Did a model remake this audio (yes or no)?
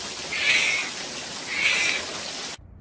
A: no